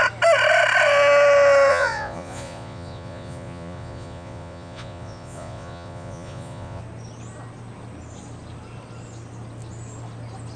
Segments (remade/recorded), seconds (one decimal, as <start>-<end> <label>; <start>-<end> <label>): 0.0-1.7 recorded; 1.7-6.8 remade; 6.8-10.6 recorded